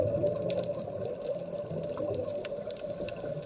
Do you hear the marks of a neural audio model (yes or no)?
no